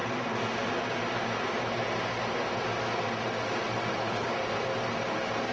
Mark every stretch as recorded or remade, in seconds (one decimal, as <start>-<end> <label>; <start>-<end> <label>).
0.0-3.9 recorded; 3.9-4.4 remade; 4.4-5.5 recorded